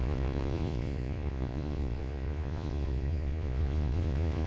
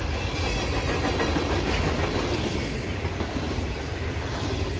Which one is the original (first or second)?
second